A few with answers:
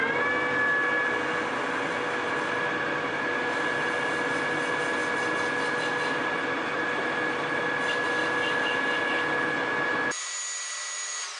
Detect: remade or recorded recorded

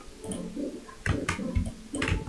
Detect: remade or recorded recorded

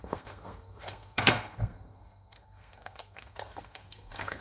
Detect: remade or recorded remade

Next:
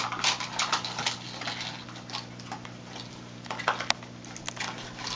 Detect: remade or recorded recorded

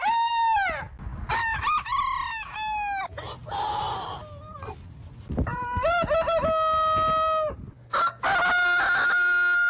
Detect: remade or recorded recorded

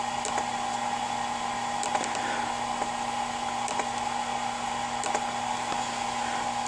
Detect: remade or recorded recorded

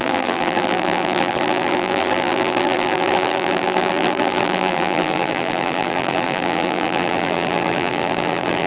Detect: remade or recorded remade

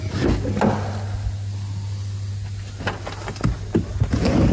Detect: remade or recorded recorded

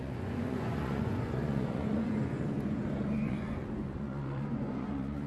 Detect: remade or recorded remade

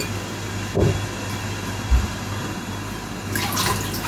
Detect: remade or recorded recorded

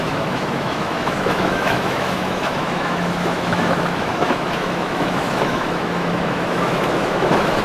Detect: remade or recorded remade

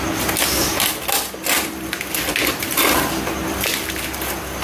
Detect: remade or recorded recorded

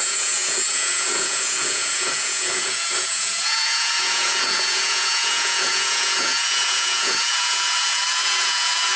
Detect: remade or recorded remade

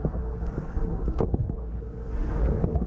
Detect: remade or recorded remade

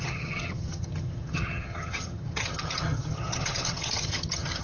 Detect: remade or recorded remade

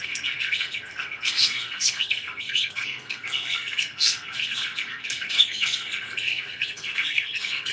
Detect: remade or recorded remade